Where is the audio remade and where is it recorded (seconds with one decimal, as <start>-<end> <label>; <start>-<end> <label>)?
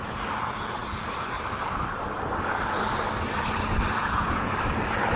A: 0.0-4.0 recorded; 4.0-4.5 remade; 4.5-5.2 recorded